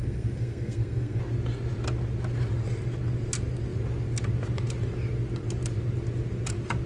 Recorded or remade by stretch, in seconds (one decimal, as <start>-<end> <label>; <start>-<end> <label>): 0.0-1.2 remade; 1.2-6.9 recorded